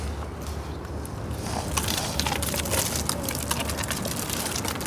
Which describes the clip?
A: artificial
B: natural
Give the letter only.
B